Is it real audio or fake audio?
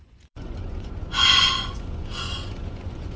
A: fake